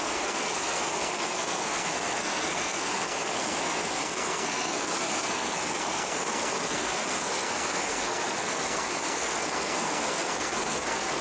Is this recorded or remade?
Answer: remade